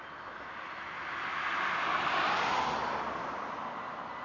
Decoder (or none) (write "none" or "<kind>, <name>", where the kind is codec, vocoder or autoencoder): none